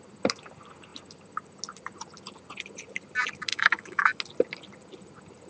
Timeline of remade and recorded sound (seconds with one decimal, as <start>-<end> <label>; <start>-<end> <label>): 0.0-3.5 recorded; 3.5-4.2 remade; 4.2-5.5 recorded